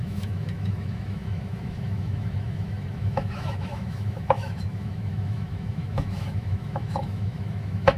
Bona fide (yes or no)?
no